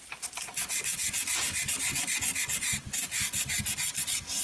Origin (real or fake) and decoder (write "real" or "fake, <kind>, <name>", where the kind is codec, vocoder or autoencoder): real